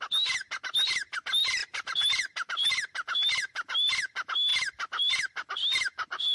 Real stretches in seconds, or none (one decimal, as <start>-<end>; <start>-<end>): 0.0-1.6; 2.7-6.3